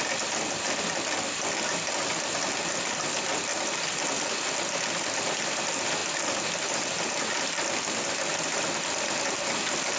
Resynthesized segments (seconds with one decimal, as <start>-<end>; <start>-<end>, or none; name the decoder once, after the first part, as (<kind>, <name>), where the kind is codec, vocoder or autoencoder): none